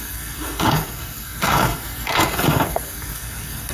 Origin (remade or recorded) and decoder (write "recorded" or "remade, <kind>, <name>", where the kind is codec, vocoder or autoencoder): remade, codec, SNAC